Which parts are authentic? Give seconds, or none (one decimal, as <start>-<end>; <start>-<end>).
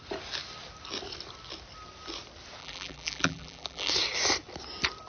0.0-2.6; 3.9-5.1